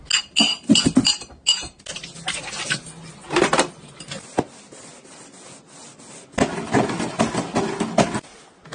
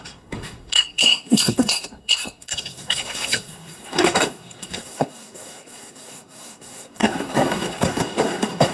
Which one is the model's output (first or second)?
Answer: second